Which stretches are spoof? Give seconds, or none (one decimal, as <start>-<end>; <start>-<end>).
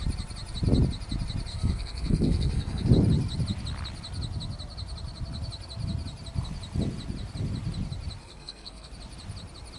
1.5-2.9; 8.2-8.9